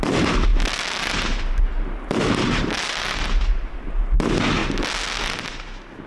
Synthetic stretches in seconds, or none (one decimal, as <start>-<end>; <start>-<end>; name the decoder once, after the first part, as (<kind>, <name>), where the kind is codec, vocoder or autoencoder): none

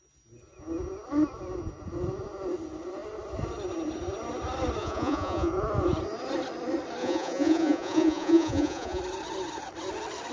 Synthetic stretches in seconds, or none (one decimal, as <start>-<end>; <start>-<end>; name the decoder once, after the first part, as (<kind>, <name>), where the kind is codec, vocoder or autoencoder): 4.8-5.5 (vocoder, Vocos); 7.0-9.0

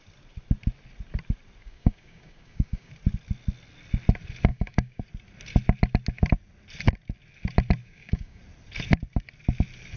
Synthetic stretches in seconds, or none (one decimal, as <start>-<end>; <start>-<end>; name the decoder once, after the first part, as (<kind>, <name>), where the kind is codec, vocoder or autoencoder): 1.6-2.9 (codec, DAC); 4.5-5.0; 7.8-8.4

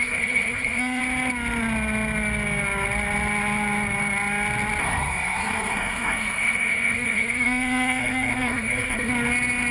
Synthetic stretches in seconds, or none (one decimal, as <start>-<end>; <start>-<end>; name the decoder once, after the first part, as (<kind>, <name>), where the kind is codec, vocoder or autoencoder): 0.0-1.0 (codec, SNAC); 4.8-9.1

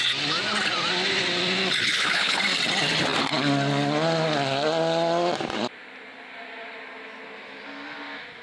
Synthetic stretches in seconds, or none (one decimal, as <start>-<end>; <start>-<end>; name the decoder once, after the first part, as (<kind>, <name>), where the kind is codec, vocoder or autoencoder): 1.8-2.4 (codec, HILCodec)

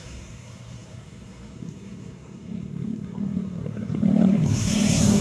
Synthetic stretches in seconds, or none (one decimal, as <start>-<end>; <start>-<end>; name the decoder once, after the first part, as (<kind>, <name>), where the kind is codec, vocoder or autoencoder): 0.0-5.2 (codec, SNAC)